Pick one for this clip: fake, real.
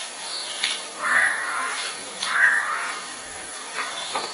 fake